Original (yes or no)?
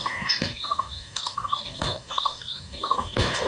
no